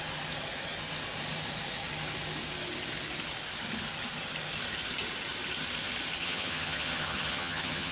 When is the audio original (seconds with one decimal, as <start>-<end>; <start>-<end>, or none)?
0.0-6.2